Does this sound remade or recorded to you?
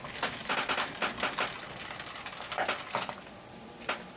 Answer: recorded